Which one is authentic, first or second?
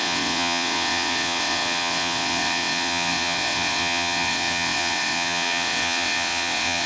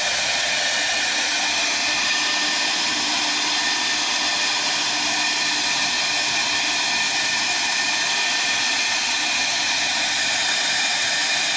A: second